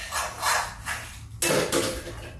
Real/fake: real